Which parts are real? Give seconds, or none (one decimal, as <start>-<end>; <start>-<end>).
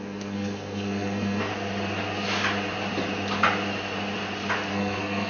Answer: 1.5-4.7